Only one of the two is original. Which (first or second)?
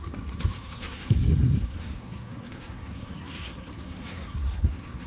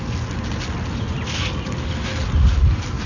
second